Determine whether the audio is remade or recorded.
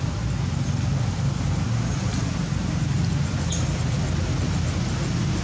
recorded